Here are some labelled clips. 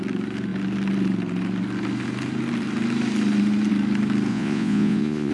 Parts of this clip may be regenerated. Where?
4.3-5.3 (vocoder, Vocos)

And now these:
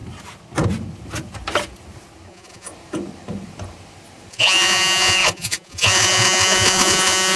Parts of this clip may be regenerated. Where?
2.3-2.7 (vocoder, Vocos); 4.3-7.4

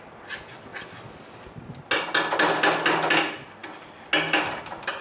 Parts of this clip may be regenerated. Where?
none

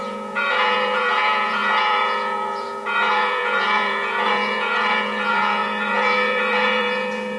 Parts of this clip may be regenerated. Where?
0.0-7.4 (vocoder, Vocos)